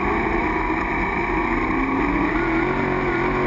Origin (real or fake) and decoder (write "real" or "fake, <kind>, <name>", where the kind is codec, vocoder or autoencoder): real